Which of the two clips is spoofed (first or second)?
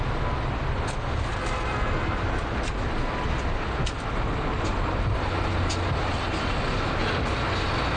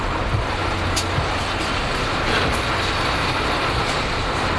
second